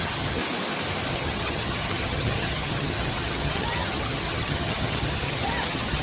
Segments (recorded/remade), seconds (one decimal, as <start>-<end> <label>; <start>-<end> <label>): 0.0-0.4 remade; 0.4-1.1 recorded; 1.1-6.0 remade